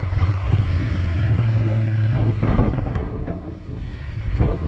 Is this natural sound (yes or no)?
no